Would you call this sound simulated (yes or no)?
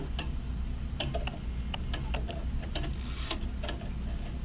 no